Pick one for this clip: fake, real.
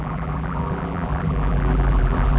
fake